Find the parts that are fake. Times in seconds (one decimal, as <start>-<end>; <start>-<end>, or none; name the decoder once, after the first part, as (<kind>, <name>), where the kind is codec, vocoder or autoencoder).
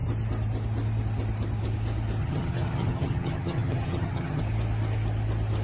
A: 2.2-4.4 (vocoder, HiFi-GAN)